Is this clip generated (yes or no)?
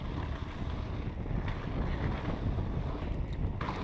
no